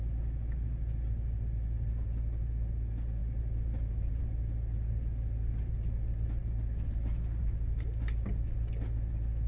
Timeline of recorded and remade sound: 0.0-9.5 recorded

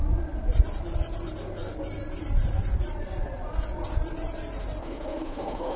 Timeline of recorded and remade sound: 0.0-4.8 recorded; 4.8-5.8 remade